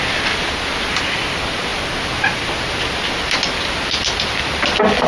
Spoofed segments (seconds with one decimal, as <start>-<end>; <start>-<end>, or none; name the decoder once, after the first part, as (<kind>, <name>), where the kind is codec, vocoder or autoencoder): none